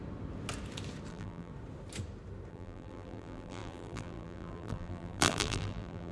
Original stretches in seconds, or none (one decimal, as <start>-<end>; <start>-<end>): 0.0-1.1; 1.5-2.5